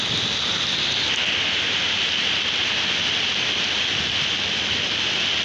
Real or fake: real